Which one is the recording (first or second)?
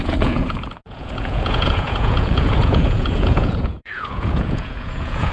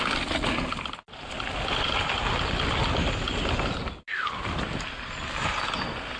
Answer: second